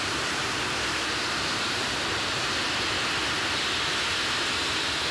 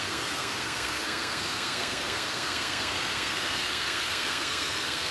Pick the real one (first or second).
first